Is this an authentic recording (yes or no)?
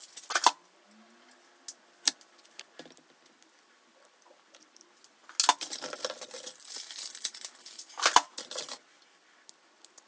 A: yes